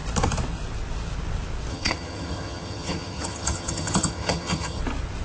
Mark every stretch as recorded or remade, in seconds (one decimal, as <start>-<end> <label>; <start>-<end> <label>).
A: 0.0-1.7 recorded; 1.7-4.8 remade; 4.8-5.2 recorded